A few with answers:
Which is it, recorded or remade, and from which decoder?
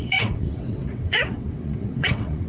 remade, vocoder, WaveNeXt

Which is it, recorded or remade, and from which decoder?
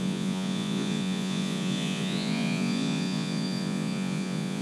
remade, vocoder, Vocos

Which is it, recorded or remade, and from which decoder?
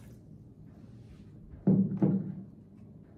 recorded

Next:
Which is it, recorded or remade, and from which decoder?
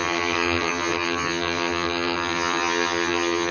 remade, vocoder, HiFi-GAN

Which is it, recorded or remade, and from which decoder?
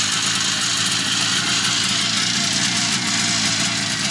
recorded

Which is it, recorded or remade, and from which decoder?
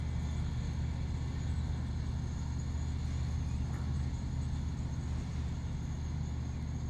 recorded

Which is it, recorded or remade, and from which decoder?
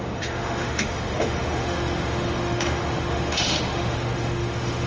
remade, autoencoder, DAC-VAE